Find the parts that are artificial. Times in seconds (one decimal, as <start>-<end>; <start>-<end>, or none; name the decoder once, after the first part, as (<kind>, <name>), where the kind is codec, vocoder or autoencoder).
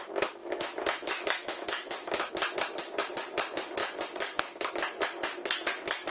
0.4-2.3 (autoencoder, DAC-VAE)